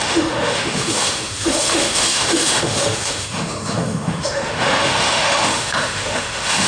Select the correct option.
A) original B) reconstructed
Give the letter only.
B